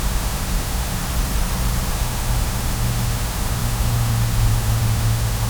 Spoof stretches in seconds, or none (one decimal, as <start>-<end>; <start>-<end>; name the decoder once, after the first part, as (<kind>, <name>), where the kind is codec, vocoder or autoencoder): 0.0-1.0 (autoencoder, DAC-VAE); 1.9-5.5